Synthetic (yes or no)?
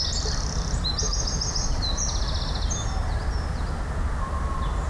no